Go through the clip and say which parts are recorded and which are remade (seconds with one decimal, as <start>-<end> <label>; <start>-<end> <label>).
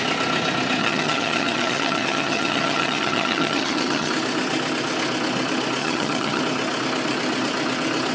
0.0-0.8 recorded; 0.8-4.1 remade; 4.1-5.8 recorded; 5.8-6.4 remade; 6.4-8.1 recorded